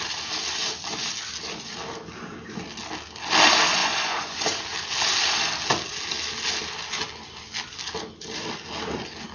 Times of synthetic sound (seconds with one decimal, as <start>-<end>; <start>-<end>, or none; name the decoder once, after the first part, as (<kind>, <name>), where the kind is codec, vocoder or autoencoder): 3.8-4.6 (vocoder, Vocos)